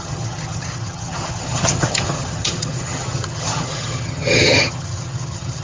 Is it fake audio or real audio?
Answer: fake